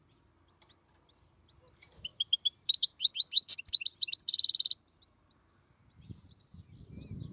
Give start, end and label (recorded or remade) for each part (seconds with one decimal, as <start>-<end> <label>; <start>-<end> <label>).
0.0-2.1 recorded; 2.1-3.1 remade; 3.1-3.9 recorded; 3.9-6.5 remade; 6.5-7.3 recorded